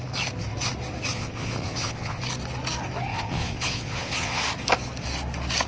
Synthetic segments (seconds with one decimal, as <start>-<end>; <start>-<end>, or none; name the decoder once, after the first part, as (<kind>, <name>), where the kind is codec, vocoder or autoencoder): 1.1-2.2 (vocoder, Vocos); 3.1-4.4